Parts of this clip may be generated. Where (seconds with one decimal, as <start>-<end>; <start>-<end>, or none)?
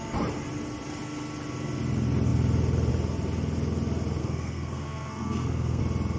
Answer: 4.2-5.8